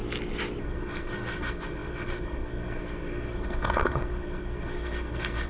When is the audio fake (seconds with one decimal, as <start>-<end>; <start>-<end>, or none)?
0.6-5.5